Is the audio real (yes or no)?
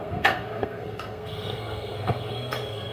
no